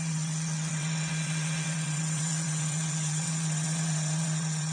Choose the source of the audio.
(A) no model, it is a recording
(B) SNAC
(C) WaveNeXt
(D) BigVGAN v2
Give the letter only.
C